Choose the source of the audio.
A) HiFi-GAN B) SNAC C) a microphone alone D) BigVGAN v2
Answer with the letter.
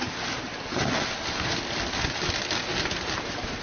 C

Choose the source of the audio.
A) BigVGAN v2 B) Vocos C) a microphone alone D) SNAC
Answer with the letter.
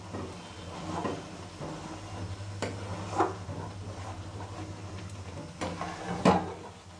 C